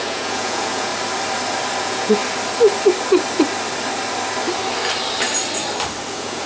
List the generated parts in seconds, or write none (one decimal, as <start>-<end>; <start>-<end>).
0.0-0.9; 1.8-2.2; 6.1-6.5